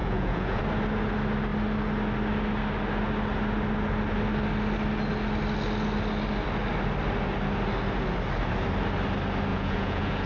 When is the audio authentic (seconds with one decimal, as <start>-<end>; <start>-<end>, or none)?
0.6-9.5